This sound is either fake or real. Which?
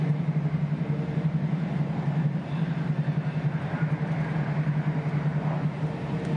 real